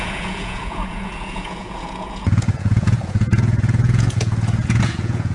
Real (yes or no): no